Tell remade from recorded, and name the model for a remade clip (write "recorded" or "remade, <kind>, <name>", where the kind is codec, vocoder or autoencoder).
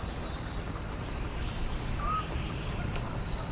recorded